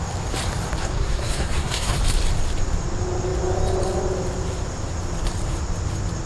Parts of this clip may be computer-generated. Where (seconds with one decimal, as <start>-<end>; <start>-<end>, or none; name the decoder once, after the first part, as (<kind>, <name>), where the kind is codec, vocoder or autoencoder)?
0.8-2.0 (codec, SNAC)